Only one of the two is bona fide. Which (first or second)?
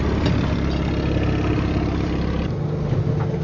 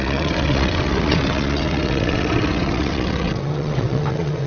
first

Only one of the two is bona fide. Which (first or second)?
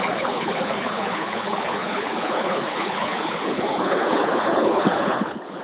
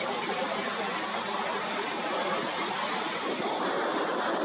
second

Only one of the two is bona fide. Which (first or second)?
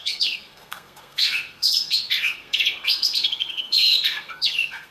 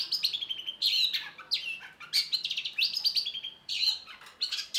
second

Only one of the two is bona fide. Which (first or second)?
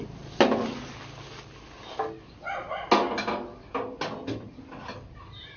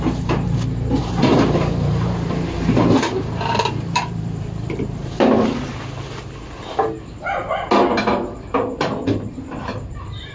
first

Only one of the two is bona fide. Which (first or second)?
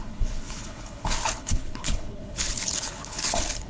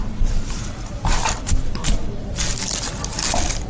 second